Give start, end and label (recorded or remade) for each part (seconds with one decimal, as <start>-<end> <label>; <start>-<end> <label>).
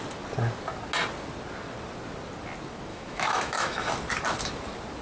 0.0-2.9 recorded; 2.9-3.9 remade; 3.9-5.0 recorded